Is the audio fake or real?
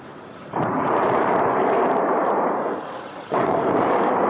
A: fake